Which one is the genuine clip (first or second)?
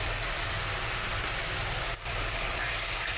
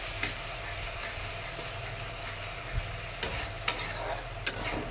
second